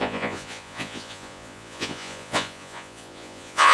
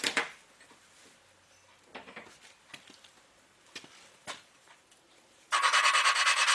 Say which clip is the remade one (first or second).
first